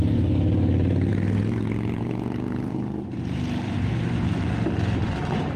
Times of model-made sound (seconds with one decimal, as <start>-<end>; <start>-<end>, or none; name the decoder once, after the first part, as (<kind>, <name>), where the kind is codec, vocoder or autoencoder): 1.1-4.5 (vocoder, BigVGAN v2)